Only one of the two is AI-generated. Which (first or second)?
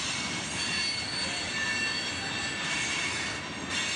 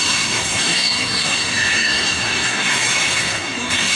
second